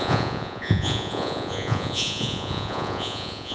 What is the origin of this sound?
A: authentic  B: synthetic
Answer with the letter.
B